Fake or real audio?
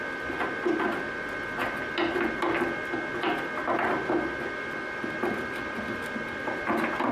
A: real